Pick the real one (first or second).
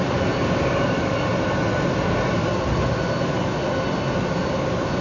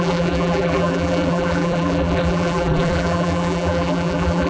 first